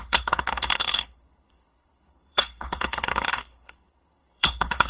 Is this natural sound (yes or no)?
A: no